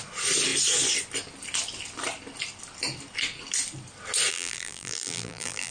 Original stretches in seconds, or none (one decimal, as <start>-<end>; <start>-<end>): 0.0-4.3